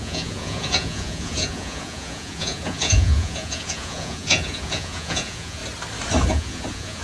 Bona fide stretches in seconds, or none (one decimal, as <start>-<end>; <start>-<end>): 5.6-6.3